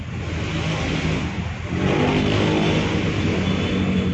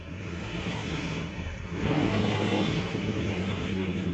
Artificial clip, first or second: second